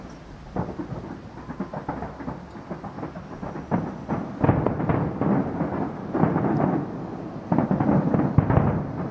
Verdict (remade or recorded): recorded